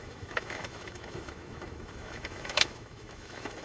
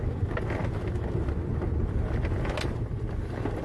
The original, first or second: second